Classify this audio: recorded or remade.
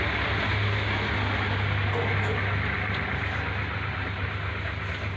recorded